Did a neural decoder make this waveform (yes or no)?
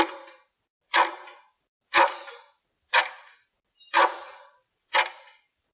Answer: no